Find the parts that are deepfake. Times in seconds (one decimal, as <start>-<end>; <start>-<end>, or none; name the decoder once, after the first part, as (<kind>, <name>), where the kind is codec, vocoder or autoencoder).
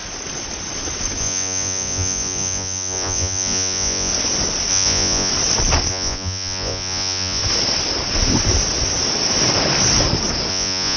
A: 1.2-4.1 (vocoder, Vocos); 4.7-5.3; 5.9-7.4; 10.5-11.0